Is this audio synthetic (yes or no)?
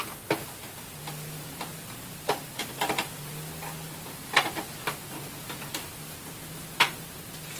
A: no